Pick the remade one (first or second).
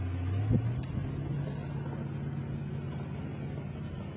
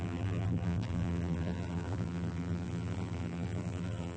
second